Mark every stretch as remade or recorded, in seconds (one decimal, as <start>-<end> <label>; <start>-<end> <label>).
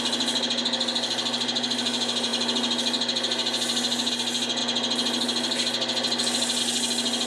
0.0-7.3 recorded